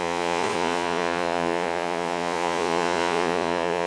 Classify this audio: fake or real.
fake